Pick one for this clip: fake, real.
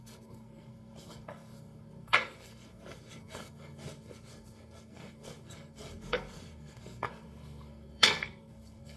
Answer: fake